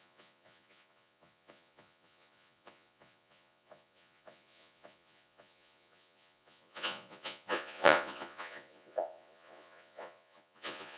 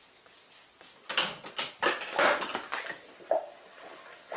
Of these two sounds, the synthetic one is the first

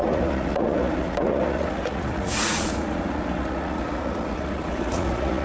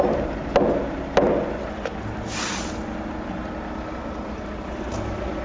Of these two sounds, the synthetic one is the first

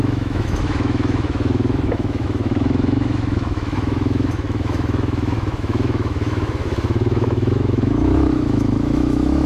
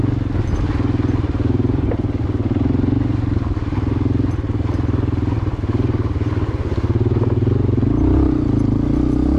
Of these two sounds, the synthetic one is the first